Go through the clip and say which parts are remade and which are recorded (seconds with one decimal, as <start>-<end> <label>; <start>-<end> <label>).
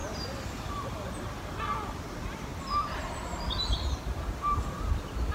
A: 0.0-5.3 recorded